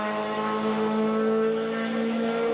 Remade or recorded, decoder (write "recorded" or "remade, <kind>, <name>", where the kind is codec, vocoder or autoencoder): remade, autoencoder, DAC-VAE